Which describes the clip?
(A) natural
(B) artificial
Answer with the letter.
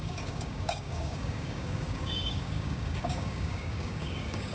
B